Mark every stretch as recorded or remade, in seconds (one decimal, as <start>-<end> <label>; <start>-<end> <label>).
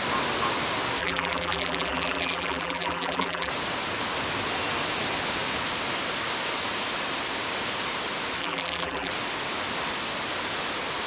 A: 0.0-1.0 recorded; 1.0-3.5 remade; 3.5-8.4 recorded; 8.4-9.1 remade; 9.1-11.1 recorded